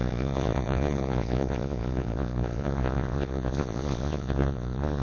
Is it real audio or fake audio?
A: fake